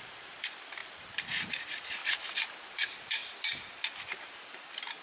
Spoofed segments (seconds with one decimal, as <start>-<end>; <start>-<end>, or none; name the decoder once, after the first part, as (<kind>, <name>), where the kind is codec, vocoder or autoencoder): 0.0-2.0 (vocoder, BigVGAN v2); 2.5-3.2; 4.2-5.0